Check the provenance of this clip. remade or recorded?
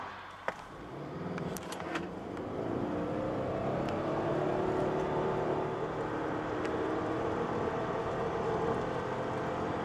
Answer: remade